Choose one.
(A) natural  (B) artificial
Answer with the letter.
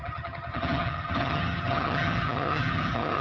B